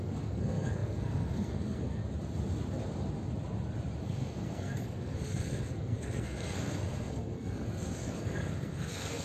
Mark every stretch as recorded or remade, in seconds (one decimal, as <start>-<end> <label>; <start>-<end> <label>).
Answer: 0.0-2.0 remade; 2.0-4.0 recorded; 4.0-9.2 remade